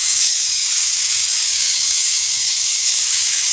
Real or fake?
fake